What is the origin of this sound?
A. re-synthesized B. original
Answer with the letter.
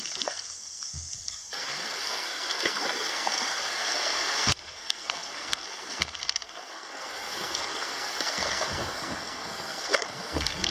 A